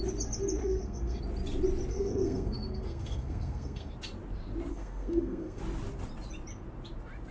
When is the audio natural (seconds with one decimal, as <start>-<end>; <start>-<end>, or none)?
0.0-0.6; 1.2-1.9; 3.9-4.7; 5.6-7.3